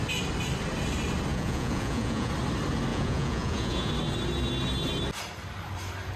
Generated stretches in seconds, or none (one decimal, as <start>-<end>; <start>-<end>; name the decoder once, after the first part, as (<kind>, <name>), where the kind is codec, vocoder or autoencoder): 1.3-2.3 (vocoder, Vocos); 2.9-3.9